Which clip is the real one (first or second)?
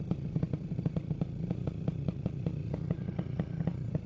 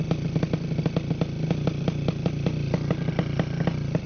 second